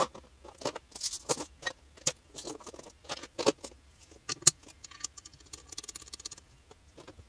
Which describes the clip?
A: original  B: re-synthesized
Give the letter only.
A